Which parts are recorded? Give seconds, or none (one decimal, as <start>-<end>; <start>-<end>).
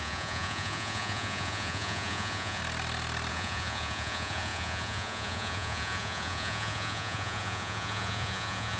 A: 2.6-3.3